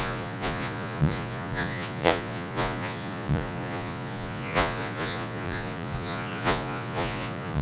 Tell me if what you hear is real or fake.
fake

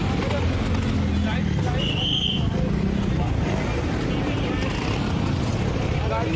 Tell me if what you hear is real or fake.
real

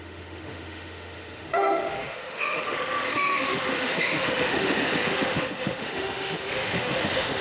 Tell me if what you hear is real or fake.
fake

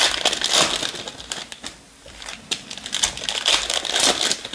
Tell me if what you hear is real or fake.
real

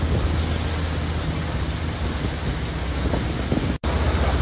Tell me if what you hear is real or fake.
real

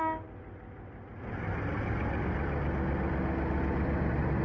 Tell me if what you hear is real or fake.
real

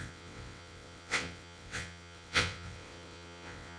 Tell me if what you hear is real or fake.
fake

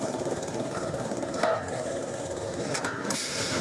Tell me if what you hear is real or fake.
fake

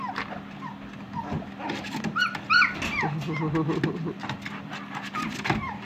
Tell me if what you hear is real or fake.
real